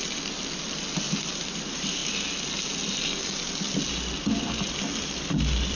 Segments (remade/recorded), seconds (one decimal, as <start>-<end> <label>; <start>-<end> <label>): 0.0-5.8 recorded